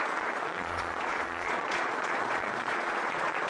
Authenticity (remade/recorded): remade